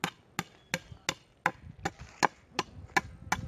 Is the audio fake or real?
real